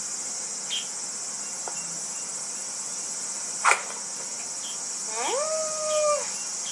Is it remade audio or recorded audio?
recorded